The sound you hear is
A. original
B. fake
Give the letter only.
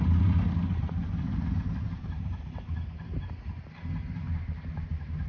B